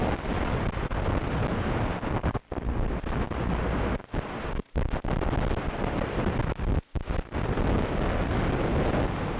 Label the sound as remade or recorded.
recorded